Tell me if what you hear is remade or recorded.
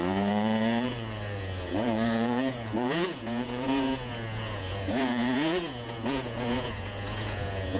remade